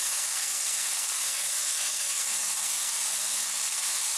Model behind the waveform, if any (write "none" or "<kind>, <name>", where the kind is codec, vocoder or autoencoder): codec, SNAC